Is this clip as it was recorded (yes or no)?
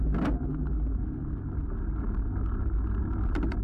yes